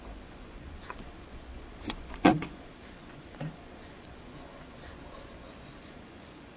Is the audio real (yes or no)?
no